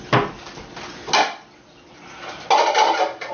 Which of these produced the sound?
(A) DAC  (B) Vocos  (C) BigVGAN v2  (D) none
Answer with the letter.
D